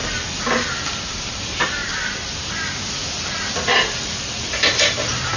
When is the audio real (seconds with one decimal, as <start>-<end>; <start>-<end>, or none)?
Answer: 0.0-1.1; 1.8-5.0